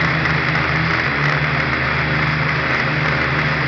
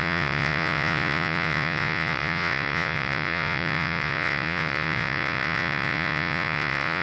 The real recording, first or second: first